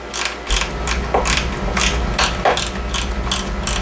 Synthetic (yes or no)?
no